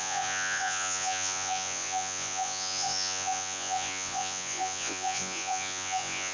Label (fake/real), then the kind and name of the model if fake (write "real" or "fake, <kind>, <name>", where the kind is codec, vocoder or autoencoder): fake, vocoder, Vocos